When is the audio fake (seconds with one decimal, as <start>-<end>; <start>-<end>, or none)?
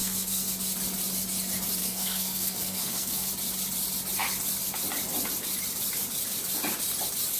0.0-0.5; 1.8-3.3